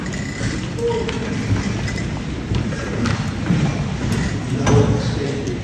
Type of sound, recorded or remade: recorded